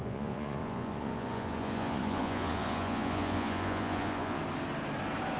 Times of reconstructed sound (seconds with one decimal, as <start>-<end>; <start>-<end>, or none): 0.0-4.4